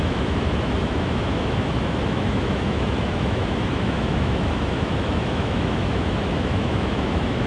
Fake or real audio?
fake